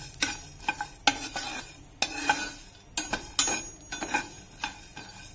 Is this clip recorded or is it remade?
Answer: recorded